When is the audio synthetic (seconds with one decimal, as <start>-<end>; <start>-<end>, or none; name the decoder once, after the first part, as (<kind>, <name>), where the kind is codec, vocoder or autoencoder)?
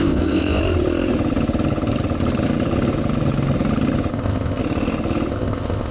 0.0-0.6 (codec, ZipCodec); 4.1-4.6; 5.3-5.9